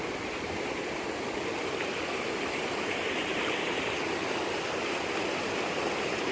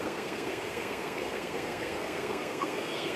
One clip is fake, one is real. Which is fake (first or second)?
second